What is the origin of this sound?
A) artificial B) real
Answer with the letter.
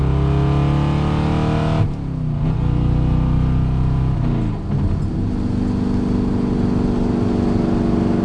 B